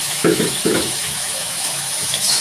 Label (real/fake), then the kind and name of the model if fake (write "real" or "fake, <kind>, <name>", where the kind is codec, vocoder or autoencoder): fake, autoencoder, DAC-VAE